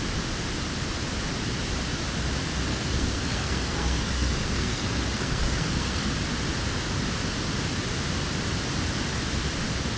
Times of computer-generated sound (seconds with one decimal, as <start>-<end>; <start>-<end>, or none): 2.7-6.1